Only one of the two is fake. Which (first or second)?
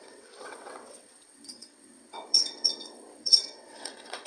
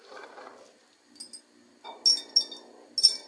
first